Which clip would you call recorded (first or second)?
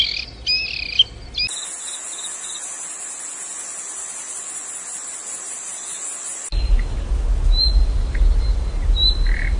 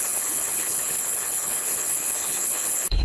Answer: first